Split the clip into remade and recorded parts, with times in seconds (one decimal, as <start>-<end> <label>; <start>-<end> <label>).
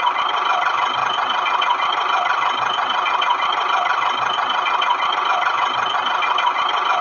0.0-7.0 recorded